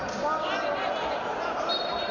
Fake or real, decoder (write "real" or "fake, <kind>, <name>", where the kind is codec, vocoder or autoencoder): real